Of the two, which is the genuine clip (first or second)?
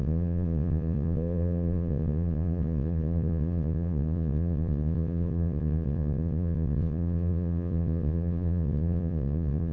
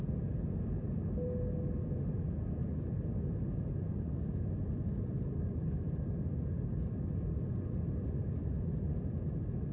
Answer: second